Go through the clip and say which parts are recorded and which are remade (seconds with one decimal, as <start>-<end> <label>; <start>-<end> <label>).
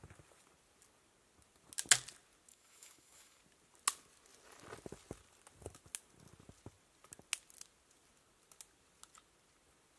0.0-2.5 recorded; 2.5-3.4 remade; 3.4-10.0 recorded